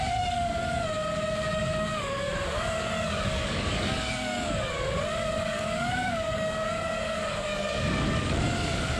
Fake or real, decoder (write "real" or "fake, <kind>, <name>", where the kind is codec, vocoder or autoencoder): fake, codec, DAC